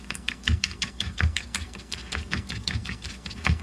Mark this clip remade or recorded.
remade